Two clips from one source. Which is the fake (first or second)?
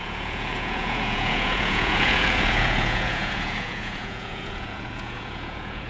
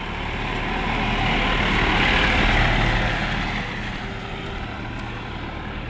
first